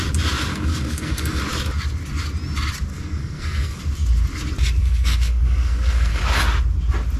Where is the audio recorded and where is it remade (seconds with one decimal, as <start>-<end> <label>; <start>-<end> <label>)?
0.0-0.5 recorded; 0.5-1.4 remade; 1.4-2.9 recorded; 2.9-3.8 remade; 3.8-4.8 recorded; 4.8-6.2 remade; 6.2-7.2 recorded